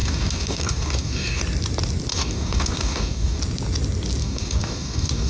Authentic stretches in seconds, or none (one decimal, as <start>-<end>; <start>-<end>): 1.4-2.1; 3.4-4.2